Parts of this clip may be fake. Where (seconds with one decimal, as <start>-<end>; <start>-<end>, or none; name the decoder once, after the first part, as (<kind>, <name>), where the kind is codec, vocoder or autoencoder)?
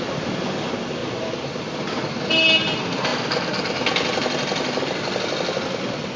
1.0-2.2 (vocoder, BigVGAN v2)